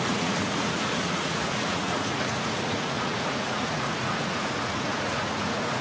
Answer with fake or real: fake